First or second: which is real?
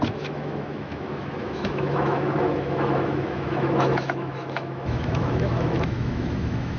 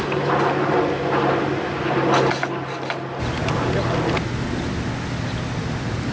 second